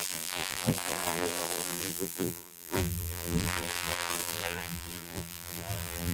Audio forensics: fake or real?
fake